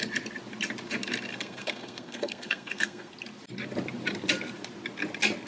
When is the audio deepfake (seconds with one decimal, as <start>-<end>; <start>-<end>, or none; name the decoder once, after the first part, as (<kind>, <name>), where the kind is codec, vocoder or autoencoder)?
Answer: 1.3-3.1 (codec, SNAC)